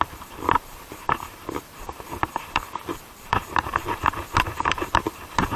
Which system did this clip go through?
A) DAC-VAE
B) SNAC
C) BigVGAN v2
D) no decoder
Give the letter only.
C